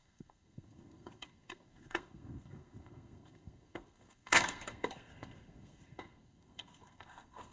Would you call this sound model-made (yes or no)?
yes